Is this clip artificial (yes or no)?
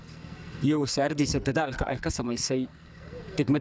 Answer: yes